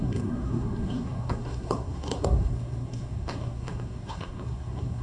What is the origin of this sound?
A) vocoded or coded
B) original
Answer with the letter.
A